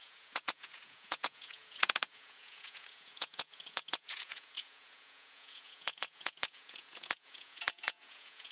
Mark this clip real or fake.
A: fake